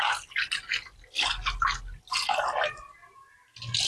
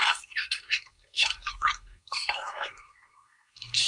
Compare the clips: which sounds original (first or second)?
first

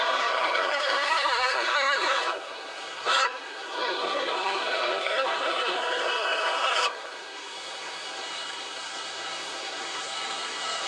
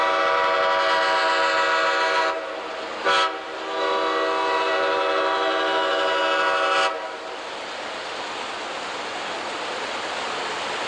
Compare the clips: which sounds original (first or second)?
second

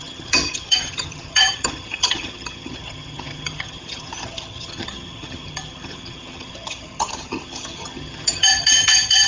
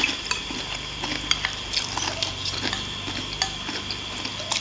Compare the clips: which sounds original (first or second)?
second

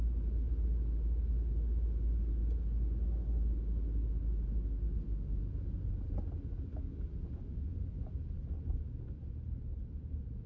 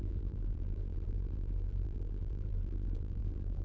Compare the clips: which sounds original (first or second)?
first